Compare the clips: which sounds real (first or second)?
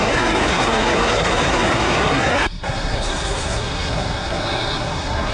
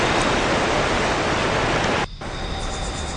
second